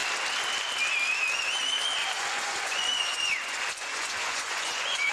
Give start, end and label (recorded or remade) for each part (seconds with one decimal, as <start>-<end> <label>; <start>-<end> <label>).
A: 0.0-2.0 recorded; 2.0-5.1 remade